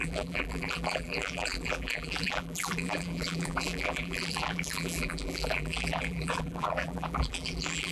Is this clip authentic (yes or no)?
no